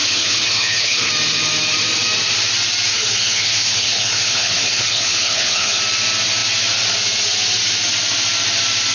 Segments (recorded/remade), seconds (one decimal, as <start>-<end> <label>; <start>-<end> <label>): 0.0-1.1 remade; 1.1-2.9 recorded; 2.9-5.8 remade; 5.8-8.9 recorded